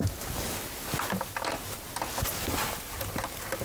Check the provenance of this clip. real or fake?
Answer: real